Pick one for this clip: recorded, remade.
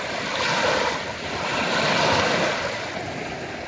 recorded